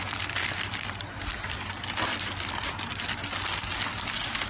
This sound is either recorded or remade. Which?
recorded